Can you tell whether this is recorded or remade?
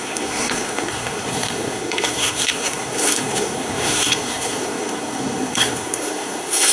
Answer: remade